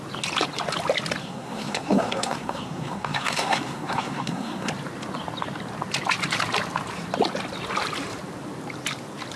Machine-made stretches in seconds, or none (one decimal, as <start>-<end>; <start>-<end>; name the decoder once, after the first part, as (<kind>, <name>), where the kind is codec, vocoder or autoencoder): 1.2-4.7 (codec, SNAC)